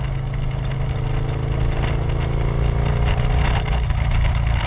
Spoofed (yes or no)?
no